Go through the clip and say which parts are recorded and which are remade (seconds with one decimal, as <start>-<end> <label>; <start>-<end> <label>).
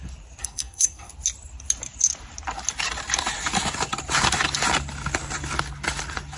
0.0-0.4 recorded; 0.4-1.1 remade; 1.1-6.4 recorded